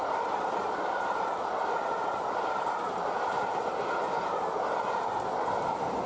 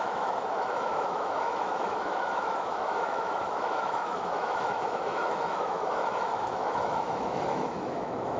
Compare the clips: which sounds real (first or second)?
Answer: first